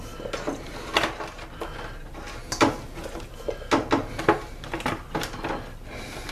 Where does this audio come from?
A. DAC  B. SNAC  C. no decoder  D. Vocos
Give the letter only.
C